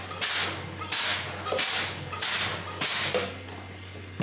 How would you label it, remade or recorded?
recorded